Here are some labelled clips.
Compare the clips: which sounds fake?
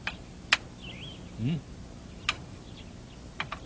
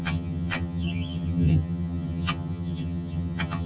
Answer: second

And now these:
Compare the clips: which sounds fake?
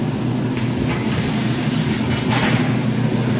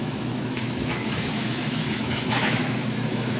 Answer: second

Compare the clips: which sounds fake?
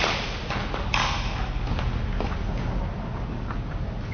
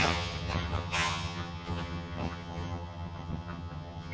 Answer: second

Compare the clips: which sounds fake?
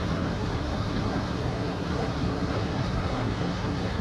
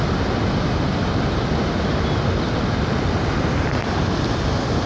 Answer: first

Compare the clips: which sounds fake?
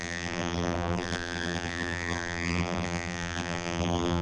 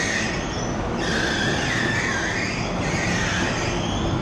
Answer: first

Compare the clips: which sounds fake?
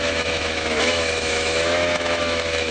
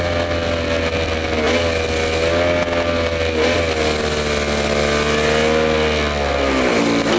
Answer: first